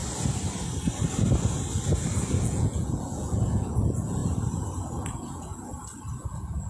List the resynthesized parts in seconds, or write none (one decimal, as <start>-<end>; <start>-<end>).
2.4-4.2; 5.1-5.5; 6.2-6.7